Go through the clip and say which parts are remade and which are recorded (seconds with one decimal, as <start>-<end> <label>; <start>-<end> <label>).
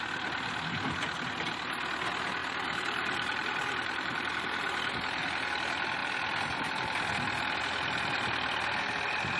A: 0.0-2.4 recorded; 2.4-5.5 remade; 5.5-9.4 recorded